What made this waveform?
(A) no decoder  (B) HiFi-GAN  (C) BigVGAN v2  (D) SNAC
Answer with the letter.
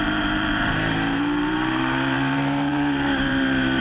C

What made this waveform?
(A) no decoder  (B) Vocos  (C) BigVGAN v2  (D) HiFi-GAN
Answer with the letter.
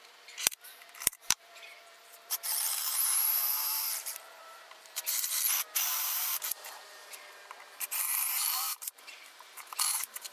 C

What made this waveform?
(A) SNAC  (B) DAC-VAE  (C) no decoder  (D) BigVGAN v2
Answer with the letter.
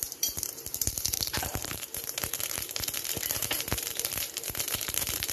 D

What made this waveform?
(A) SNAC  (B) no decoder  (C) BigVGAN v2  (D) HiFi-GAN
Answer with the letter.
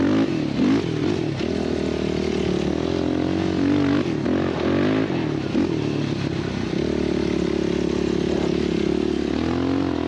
B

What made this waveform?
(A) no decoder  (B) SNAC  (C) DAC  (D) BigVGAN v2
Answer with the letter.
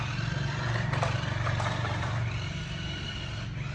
D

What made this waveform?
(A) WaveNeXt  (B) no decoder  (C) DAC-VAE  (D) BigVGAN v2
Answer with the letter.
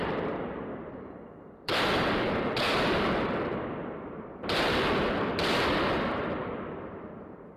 D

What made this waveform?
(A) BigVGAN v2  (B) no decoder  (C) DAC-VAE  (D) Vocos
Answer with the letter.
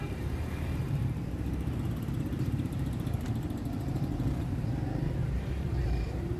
A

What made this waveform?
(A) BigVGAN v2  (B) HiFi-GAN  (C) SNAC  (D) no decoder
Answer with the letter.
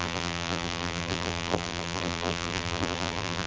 A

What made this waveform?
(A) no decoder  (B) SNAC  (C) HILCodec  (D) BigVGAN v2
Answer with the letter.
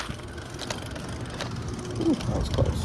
A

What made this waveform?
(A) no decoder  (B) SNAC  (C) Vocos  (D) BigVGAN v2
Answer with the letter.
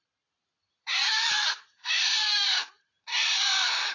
D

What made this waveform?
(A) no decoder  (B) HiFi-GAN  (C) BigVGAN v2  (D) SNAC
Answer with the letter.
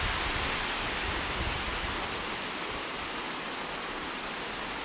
A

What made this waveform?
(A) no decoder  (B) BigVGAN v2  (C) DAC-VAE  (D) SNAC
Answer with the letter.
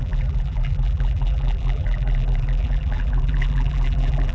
B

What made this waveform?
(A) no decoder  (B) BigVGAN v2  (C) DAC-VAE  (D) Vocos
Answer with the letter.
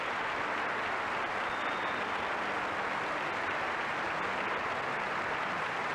A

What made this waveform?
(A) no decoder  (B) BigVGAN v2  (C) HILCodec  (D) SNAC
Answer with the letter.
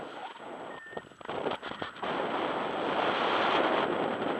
A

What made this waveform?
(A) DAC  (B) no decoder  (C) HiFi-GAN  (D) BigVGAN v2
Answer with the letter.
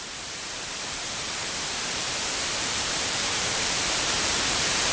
D